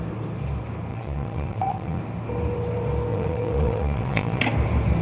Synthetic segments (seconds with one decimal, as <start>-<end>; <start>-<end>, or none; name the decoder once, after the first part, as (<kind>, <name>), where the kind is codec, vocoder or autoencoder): 0.9-2.0 (vocoder, WaveNeXt); 3.1-4.4